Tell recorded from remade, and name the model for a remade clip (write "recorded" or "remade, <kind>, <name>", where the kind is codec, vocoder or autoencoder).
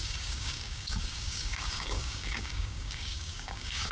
remade, codec, DAC